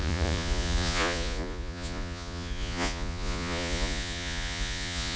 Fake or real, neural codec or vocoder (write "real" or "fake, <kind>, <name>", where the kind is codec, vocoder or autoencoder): fake, vocoder, Vocos